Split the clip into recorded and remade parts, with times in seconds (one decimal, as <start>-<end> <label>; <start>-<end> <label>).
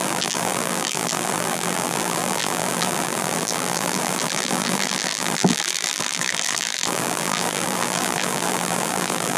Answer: 0.0-9.4 remade